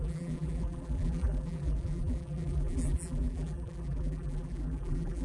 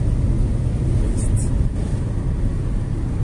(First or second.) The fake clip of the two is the first